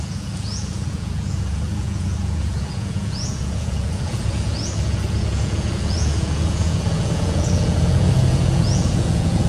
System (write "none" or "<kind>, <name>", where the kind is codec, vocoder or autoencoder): vocoder, Vocos